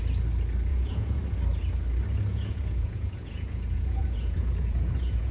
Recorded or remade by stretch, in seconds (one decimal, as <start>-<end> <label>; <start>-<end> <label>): 0.0-0.7 recorded; 0.7-1.2 remade; 1.2-2.3 recorded; 2.3-5.3 remade